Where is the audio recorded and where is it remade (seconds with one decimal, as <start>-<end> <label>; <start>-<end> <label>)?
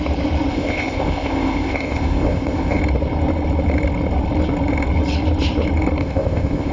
0.0-0.5 recorded; 0.5-2.8 remade; 2.8-6.0 recorded; 6.0-6.7 remade